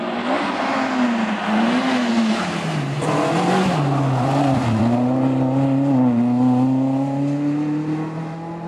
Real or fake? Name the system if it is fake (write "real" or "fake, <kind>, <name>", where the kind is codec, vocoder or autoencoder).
real